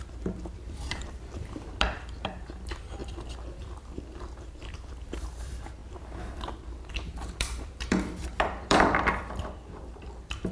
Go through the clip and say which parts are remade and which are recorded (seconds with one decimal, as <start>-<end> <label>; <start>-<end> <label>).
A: 0.0-5.8 remade; 5.8-6.9 recorded; 6.9-10.5 remade